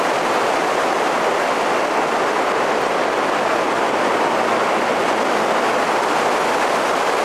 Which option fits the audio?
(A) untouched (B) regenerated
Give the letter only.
A